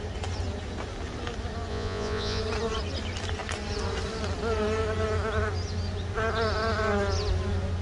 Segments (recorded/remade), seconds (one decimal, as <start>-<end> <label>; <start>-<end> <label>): 0.0-1.7 recorded; 1.7-2.4 remade; 2.4-7.8 recorded